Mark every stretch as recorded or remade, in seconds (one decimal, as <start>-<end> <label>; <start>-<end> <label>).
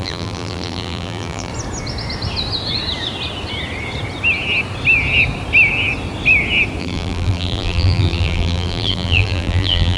0.0-1.5 remade; 1.5-6.8 recorded; 6.8-10.0 remade